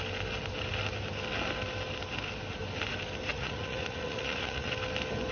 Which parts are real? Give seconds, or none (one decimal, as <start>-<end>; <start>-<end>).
0.0-3.3; 4.7-5.3